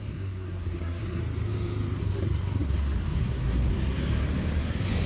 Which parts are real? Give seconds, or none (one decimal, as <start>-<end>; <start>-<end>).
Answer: 1.2-2.0; 3.7-4.6